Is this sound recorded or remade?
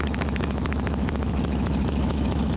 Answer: remade